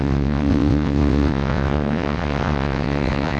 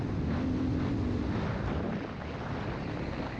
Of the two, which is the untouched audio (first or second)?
second